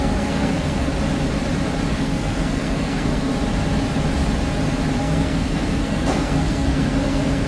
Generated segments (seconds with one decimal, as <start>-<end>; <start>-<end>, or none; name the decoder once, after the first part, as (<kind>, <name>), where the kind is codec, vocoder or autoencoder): 0.0-0.9 (codec, SNAC); 1.9-3.3; 5.0-7.5